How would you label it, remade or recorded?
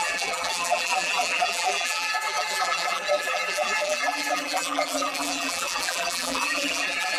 remade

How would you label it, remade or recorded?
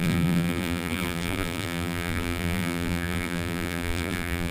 remade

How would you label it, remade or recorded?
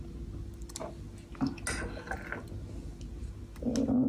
recorded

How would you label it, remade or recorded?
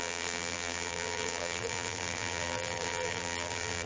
remade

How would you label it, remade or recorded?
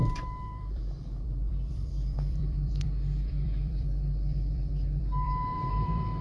remade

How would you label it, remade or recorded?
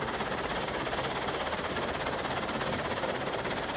remade